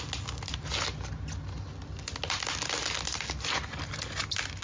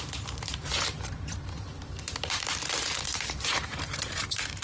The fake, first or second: second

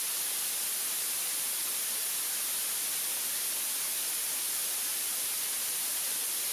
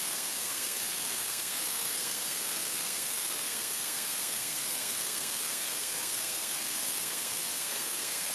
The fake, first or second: second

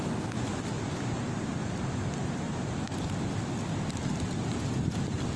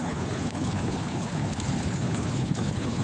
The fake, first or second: second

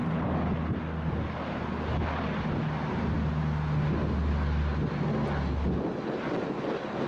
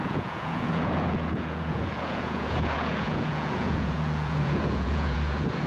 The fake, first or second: second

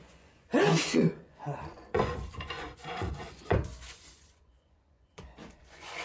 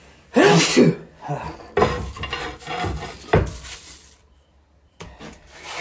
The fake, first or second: first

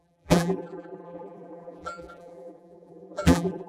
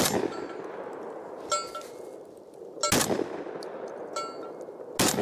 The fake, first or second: first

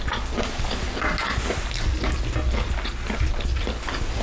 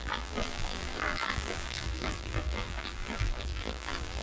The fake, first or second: second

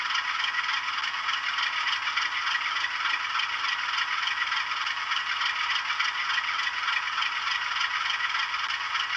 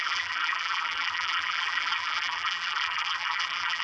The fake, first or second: second